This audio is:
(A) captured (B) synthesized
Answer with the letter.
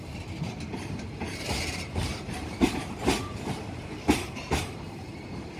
B